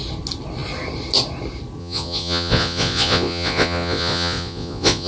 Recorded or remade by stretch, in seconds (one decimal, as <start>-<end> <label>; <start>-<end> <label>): 0.0-1.8 recorded; 1.8-5.1 remade